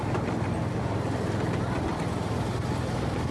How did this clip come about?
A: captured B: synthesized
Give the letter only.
A